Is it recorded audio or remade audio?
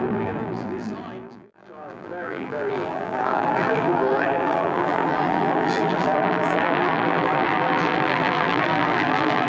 remade